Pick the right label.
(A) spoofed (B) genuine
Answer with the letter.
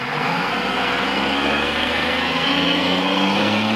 A